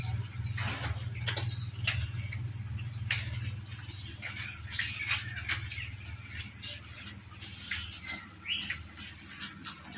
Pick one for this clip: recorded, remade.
recorded